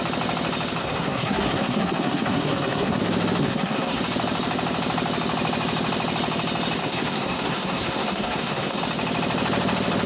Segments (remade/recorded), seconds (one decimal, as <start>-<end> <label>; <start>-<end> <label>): 0.0-0.8 recorded; 0.8-3.0 remade; 3.0-3.4 recorded; 3.4-4.0 remade; 4.0-6.8 recorded; 6.8-8.8 remade; 8.8-10.1 recorded